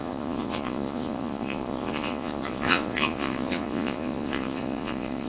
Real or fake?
fake